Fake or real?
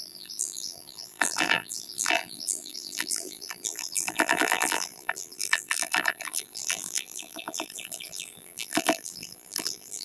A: fake